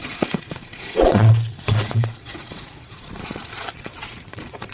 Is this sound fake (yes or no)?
yes